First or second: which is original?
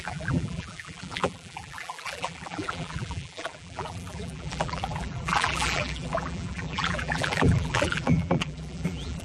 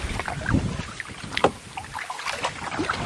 second